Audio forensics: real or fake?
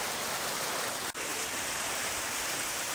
fake